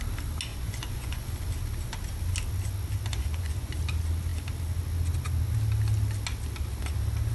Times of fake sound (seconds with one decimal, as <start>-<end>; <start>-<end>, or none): 0.5-1.5; 3.1-3.7